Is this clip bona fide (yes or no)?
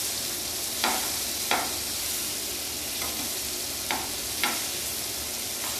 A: yes